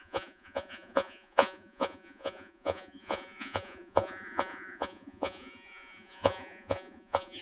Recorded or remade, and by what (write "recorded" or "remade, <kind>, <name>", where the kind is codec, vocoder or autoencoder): remade, vocoder, Vocos